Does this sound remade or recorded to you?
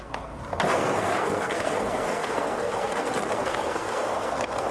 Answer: remade